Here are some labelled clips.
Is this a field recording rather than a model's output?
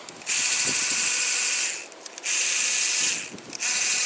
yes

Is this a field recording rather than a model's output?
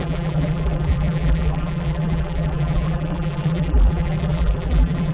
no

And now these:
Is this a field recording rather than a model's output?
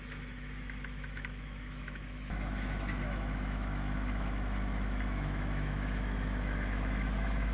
no